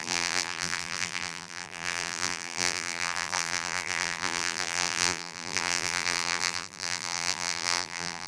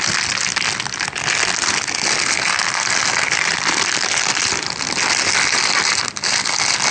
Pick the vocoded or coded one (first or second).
first